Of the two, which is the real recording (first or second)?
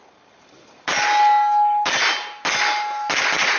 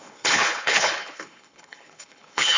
first